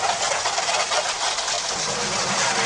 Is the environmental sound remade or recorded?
recorded